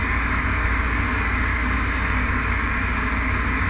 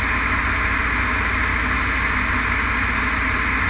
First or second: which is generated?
first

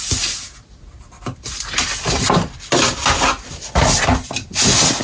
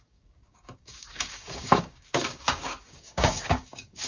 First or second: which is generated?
second